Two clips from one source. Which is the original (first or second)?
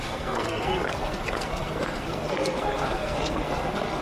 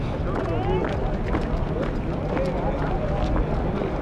second